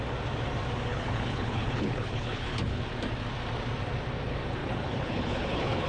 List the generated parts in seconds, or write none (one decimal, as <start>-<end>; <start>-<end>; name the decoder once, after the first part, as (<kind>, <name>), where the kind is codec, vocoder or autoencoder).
0.9-2.8 (codec, HILCodec); 4.6-5.9